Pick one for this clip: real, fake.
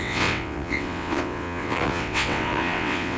fake